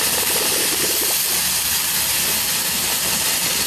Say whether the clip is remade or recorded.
recorded